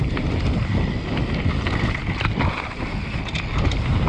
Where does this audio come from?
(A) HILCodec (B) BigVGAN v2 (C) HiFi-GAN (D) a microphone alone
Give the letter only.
D